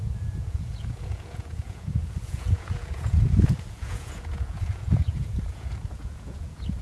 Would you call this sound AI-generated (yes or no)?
yes